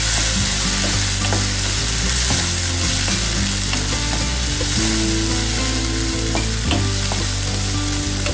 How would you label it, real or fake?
real